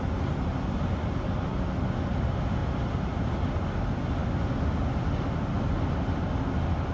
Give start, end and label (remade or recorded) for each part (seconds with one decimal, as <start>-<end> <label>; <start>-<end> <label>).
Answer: 0.0-6.9 recorded